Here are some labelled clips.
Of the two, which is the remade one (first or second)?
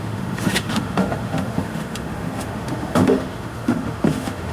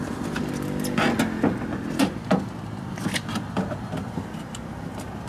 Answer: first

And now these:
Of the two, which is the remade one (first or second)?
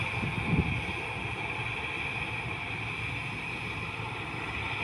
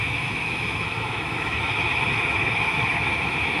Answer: second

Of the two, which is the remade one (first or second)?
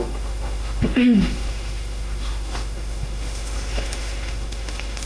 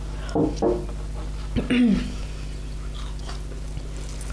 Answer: first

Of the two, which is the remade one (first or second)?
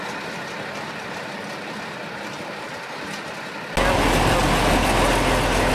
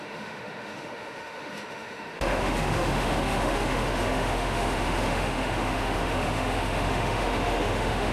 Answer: second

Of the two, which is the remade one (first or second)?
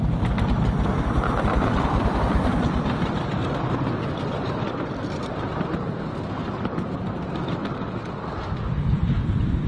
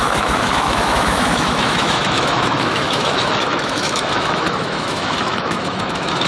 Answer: second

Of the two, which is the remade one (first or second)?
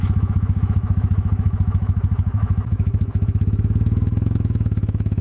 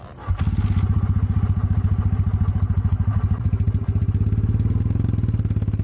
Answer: first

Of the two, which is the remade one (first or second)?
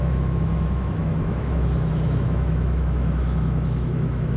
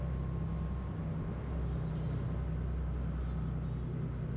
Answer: first